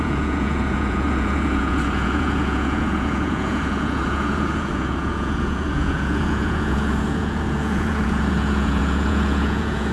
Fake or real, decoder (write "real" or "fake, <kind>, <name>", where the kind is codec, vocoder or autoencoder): fake, vocoder, Vocos